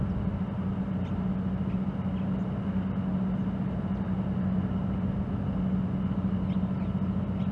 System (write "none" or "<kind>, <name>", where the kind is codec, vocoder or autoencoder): none